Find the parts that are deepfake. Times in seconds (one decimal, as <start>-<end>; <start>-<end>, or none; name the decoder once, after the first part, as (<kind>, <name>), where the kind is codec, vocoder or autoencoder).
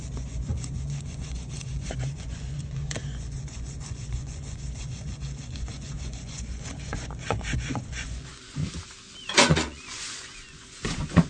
0.0-8.6 (vocoder, Vocos); 9.2-11.3